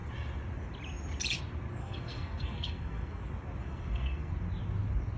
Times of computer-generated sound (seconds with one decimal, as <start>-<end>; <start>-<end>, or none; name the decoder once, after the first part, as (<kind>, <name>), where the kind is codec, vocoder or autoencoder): 1.8-3.2 (codec, SNAC); 3.6-4.3